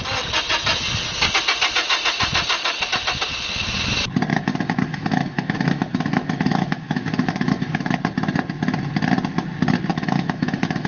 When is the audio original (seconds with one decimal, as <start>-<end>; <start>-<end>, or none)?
0.0-4.3; 7.9-9.9